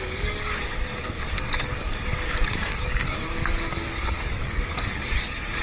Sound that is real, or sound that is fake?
fake